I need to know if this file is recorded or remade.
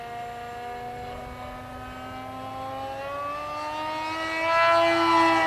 recorded